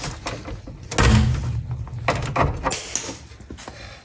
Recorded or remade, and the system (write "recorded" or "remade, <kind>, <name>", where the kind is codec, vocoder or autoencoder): recorded